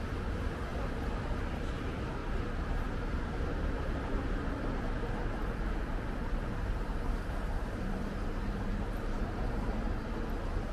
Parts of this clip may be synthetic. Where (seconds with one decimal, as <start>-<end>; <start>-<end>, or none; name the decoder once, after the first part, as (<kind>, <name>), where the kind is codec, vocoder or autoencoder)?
2.2-4.4 (vocoder, BigVGAN v2); 6.2-10.1